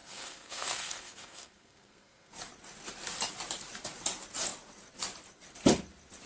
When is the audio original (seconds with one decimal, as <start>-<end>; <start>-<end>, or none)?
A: 2.3-6.3